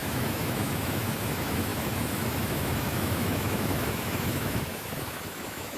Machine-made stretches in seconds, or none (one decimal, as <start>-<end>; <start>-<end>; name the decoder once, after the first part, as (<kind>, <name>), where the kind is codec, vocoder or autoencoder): 0.0-5.8 (autoencoder, DAC-VAE)